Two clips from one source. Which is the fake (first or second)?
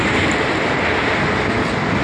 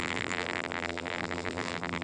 second